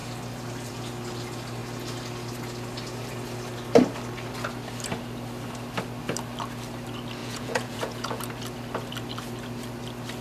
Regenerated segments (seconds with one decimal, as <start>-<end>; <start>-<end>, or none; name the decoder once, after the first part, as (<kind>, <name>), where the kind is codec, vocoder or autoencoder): 7.2-8.2 (vocoder, Vocos)